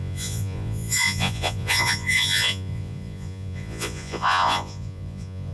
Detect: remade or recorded remade